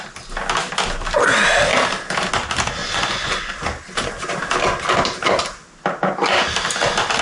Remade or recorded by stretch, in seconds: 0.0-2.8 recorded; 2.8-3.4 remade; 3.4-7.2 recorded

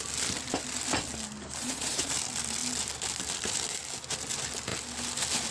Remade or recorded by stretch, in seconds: 0.0-1.6 recorded; 1.6-2.1 remade; 2.1-5.5 recorded

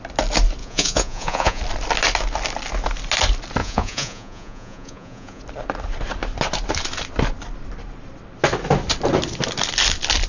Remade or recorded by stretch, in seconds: 0.0-0.6 recorded; 0.6-1.6 remade; 1.6-3.6 recorded; 3.6-5.4 remade; 5.4-10.3 recorded

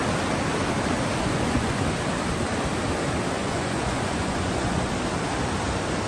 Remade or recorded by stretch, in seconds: 0.0-1.2 recorded; 1.2-1.8 remade; 1.8-3.4 recorded; 3.4-4.9 remade; 4.9-6.1 recorded

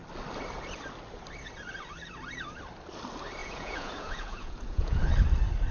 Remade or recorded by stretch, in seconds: 0.0-3.4 recorded; 3.4-5.0 remade; 5.0-5.7 recorded

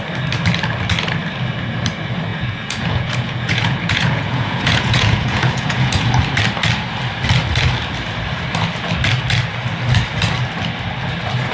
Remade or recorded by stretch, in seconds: 0.0-2.3 recorded; 2.3-6.1 remade; 6.1-11.5 recorded